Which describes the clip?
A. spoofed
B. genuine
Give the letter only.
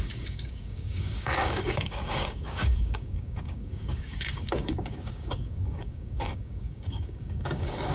A